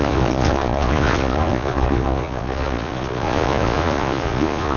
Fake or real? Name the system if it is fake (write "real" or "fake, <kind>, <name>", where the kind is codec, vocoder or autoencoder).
fake, vocoder, Vocos